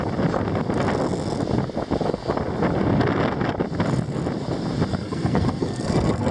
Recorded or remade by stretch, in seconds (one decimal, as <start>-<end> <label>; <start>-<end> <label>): 0.0-4.9 recorded; 4.9-6.3 remade